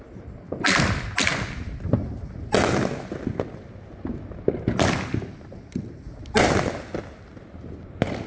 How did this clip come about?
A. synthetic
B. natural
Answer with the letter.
B